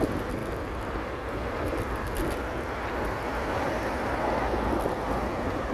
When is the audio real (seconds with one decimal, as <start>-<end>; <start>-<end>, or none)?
0.0-0.4; 3.8-5.7